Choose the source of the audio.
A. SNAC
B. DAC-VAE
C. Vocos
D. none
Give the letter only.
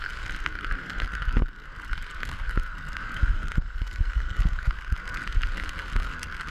A